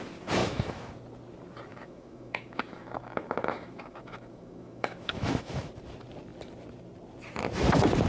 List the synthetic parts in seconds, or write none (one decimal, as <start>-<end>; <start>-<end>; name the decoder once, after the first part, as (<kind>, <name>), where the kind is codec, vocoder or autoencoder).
0.4-0.9 (autoencoder, DAC-VAE); 1.7-5.7